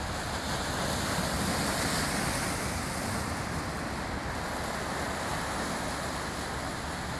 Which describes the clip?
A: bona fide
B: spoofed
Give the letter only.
A